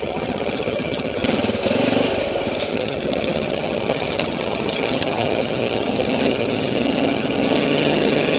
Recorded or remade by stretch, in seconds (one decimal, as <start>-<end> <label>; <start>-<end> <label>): 0.0-1.4 remade; 1.4-2.7 recorded; 2.7-8.4 remade